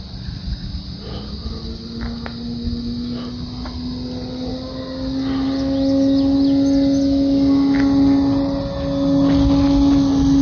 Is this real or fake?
real